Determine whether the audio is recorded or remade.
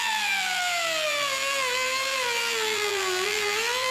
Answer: remade